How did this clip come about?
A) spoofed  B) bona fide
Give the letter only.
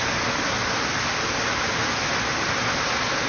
B